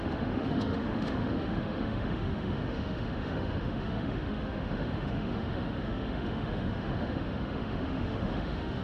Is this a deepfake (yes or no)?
yes